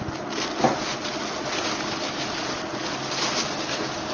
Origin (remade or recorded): recorded